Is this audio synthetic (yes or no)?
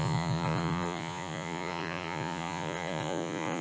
yes